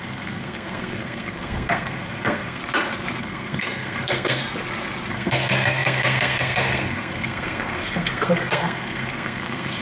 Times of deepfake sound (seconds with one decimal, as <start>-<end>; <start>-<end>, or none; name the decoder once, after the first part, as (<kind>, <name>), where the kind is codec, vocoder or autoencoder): 0.0-2.6 (codec, SNAC); 3.2-4.4; 5.1-9.8